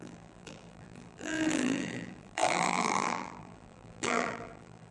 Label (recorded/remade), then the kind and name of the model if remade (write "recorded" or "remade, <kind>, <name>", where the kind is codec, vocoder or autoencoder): remade, vocoder, BigVGAN v2